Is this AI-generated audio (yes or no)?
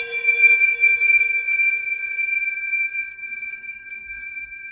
yes